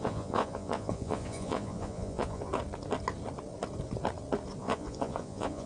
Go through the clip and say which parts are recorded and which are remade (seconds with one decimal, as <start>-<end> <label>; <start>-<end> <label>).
0.0-2.5 remade; 2.5-4.6 recorded; 4.6-5.7 remade